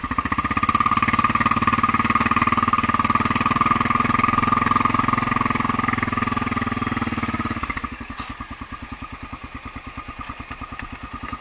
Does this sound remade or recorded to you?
recorded